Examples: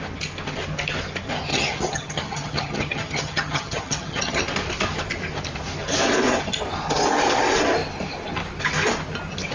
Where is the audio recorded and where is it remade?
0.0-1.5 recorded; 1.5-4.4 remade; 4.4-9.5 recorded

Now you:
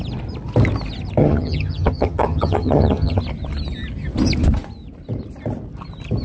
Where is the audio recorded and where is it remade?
0.0-1.2 recorded; 1.2-3.2 remade; 3.2-6.2 recorded

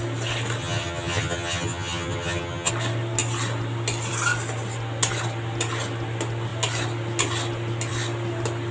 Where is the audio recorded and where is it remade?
0.0-0.6 recorded; 0.6-2.7 remade; 2.7-8.7 recorded